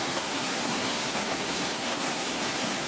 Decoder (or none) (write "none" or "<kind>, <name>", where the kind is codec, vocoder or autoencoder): codec, SNAC